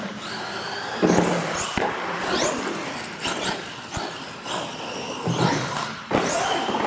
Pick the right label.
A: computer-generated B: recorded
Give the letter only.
B